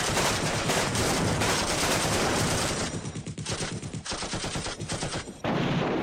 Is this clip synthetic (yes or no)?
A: yes